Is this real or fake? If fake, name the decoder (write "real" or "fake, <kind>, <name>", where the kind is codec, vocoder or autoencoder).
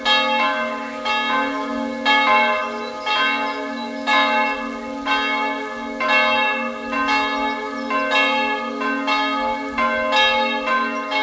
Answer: real